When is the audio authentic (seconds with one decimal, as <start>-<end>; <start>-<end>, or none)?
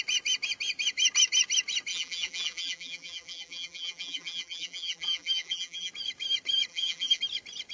0.0-1.9; 5.9-6.7; 7.2-7.7